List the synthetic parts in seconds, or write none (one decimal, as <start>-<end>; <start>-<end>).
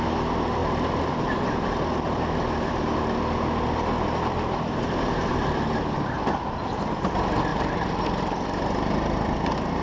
7.5-8.0